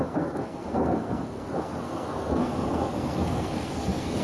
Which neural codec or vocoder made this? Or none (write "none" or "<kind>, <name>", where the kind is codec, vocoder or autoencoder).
codec, SNAC